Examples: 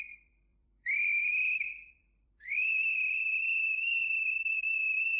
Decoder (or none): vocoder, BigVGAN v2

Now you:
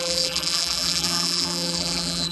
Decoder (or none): vocoder, BigVGAN v2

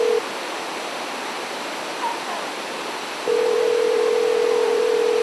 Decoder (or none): vocoder, BigVGAN v2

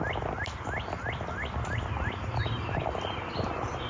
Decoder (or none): none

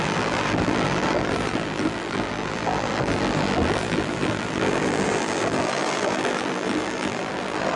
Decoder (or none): vocoder, BigVGAN v2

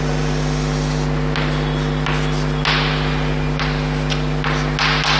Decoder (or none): none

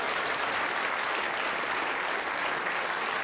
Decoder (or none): vocoder, BigVGAN v2